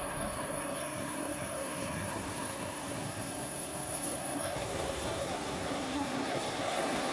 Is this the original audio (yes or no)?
no